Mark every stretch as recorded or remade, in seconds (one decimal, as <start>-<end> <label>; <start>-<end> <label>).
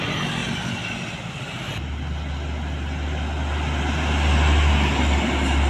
0.0-5.7 recorded